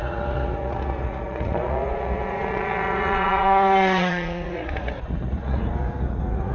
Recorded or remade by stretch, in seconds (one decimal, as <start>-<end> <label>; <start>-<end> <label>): 0.0-6.5 remade